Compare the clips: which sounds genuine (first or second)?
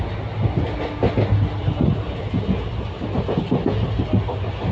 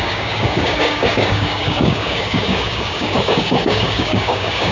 first